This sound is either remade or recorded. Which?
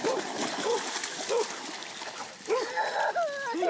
recorded